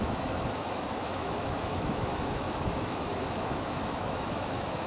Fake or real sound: fake